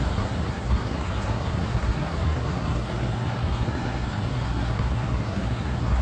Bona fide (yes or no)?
no